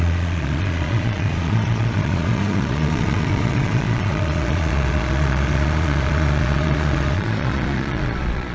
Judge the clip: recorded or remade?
remade